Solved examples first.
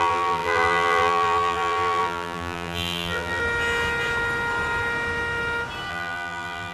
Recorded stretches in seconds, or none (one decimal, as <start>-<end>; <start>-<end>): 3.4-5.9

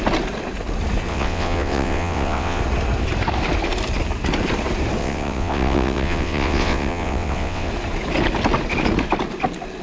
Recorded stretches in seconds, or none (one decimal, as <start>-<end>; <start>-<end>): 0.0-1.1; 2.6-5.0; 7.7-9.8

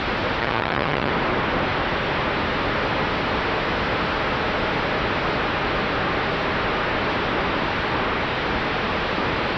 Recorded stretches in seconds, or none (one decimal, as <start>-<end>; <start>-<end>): 0.0-0.4; 1.1-9.6

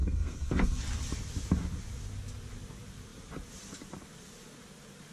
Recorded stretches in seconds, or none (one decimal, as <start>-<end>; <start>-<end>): 0.8-5.1

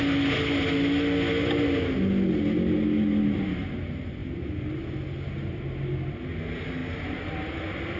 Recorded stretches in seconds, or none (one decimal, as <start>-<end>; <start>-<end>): 0.0-8.0

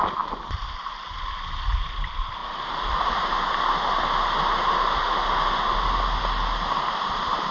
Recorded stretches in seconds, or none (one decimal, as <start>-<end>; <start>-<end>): 0.0-7.5